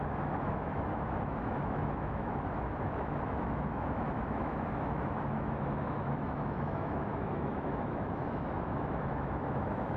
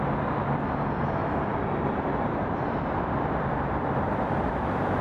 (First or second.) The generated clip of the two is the first